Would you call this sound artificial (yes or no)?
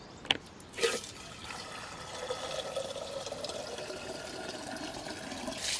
no